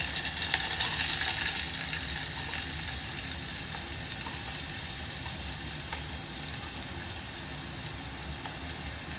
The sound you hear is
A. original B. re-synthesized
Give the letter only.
A